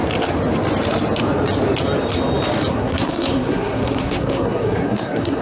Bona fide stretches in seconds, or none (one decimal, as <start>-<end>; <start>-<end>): 0.0-2.7